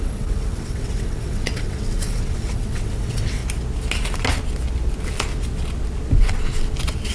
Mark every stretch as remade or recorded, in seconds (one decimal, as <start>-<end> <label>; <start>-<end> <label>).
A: 0.0-3.4 remade; 3.4-7.1 recorded